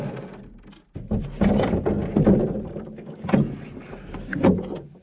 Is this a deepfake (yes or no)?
no